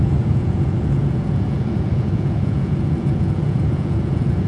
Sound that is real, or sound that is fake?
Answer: fake